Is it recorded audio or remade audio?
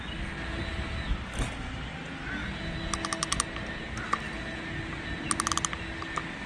recorded